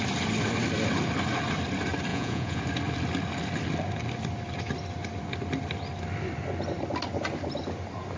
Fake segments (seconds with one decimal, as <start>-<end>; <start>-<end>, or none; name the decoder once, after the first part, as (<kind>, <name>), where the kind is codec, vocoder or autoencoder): 2.1-2.6 (vocoder, Vocos)